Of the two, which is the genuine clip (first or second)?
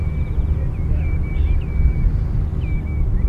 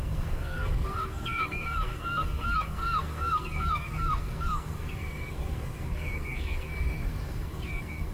first